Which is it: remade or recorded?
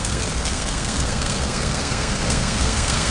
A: remade